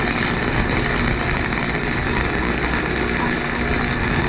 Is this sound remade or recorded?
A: recorded